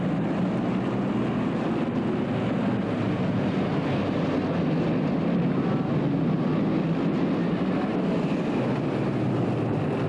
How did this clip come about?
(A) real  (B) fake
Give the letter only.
A